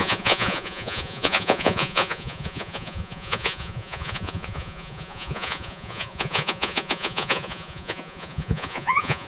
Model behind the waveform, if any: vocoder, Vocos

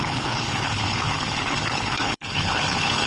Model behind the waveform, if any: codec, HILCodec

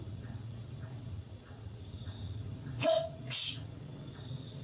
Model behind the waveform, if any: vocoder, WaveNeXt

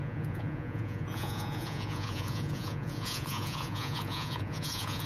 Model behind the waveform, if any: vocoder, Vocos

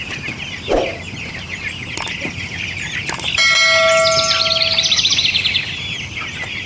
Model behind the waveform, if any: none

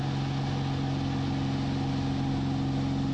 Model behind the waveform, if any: none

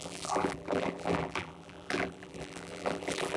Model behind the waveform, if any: vocoder, BigVGAN v2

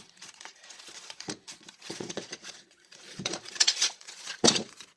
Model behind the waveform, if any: vocoder, Vocos